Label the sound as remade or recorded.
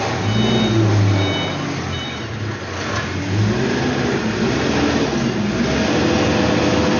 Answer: recorded